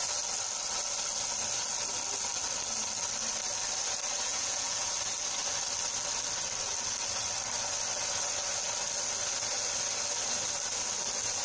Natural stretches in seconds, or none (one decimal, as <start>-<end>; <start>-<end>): 0.0-4.3; 4.9-11.4